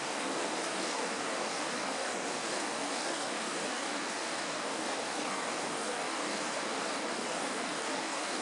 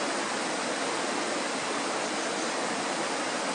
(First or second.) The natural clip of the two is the second